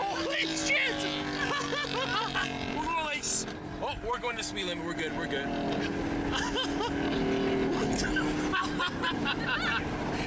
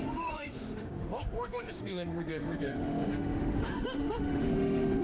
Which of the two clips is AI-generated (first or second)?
second